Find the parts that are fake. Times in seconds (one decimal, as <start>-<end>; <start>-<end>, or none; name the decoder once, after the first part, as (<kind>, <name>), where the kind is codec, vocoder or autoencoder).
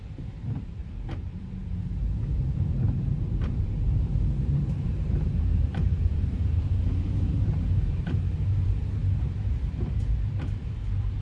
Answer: 0.0-11.2 (vocoder, BigVGAN v2)